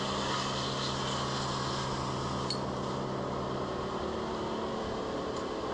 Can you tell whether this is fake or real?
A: real